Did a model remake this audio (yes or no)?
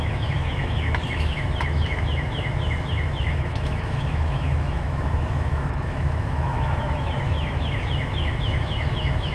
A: yes